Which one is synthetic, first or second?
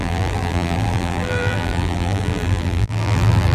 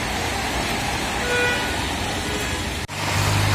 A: first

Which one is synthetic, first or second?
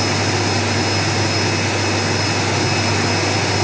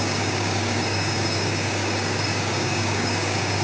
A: second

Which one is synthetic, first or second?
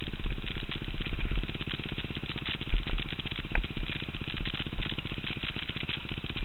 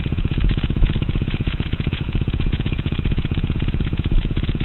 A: second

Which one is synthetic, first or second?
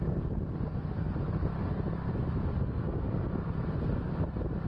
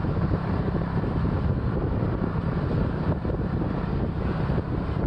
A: second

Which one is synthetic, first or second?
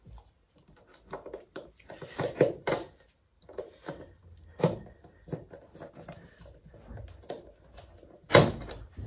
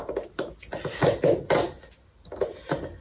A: first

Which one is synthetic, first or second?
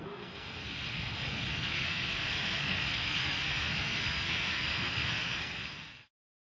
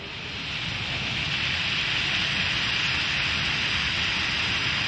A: first